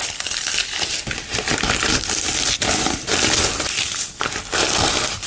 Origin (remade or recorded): remade